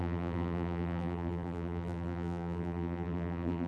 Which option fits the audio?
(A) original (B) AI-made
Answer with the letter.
B